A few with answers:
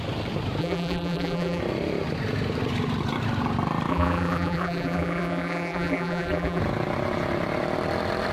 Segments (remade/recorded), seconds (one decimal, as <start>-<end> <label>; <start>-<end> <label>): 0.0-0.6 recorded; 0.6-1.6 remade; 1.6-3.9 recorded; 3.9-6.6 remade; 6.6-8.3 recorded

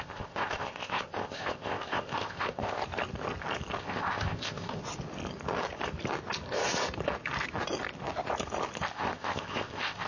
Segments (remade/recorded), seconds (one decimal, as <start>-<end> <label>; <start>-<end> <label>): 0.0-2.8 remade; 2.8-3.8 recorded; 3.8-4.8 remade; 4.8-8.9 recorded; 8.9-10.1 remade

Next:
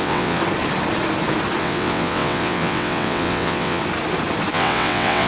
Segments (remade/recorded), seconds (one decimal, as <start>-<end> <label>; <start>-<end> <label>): 0.0-0.4 remade; 0.4-1.6 recorded; 1.6-3.8 remade; 3.8-4.5 recorded; 4.5-5.3 remade